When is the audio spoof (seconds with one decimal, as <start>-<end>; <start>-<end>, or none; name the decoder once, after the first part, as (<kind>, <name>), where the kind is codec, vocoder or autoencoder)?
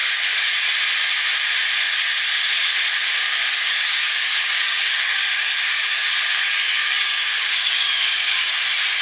0.0-0.5 (codec, DAC); 3.2-8.5